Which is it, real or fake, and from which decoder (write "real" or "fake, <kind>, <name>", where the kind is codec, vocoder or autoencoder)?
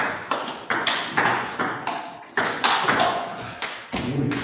fake, vocoder, Vocos